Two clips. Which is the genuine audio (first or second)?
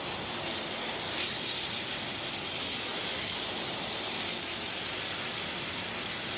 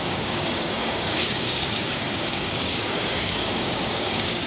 first